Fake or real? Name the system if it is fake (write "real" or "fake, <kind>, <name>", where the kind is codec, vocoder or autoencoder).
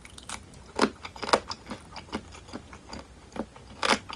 real